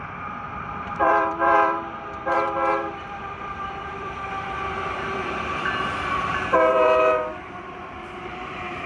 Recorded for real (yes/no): no